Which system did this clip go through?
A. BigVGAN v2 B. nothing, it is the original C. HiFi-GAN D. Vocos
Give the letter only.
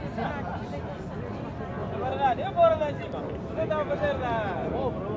B